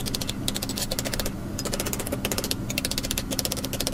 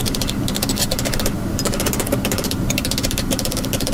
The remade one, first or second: second